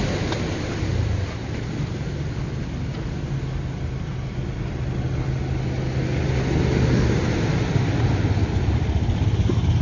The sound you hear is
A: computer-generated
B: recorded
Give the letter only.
B